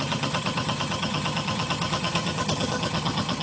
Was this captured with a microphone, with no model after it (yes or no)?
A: no